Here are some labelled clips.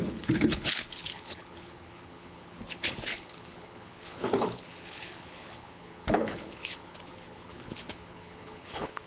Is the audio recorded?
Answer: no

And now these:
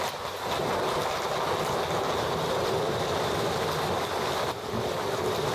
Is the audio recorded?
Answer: yes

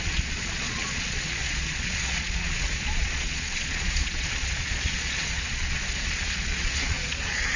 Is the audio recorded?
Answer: no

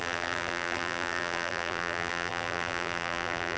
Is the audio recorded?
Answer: no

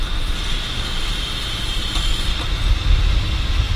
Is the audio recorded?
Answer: yes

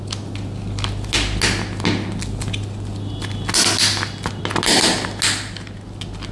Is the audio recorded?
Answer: yes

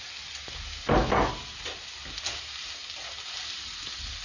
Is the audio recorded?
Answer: yes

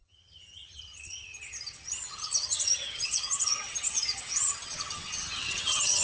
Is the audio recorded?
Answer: no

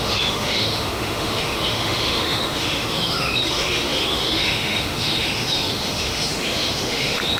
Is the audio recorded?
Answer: no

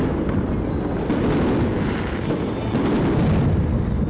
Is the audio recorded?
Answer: yes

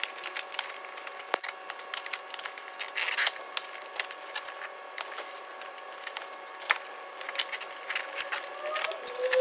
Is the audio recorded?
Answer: yes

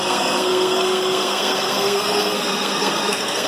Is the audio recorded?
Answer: no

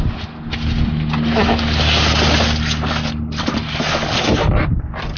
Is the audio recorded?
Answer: yes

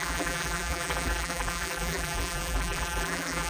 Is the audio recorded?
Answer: no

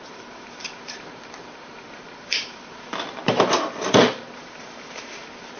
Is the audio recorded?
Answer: no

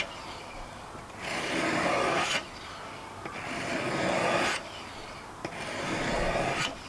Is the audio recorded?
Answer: yes